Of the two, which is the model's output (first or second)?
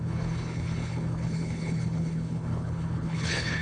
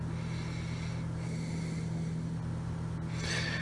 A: first